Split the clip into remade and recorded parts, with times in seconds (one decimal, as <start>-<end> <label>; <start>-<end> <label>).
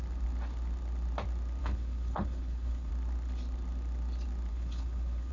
0.0-1.6 recorded; 1.6-2.9 remade; 2.9-4.5 recorded; 4.5-5.3 remade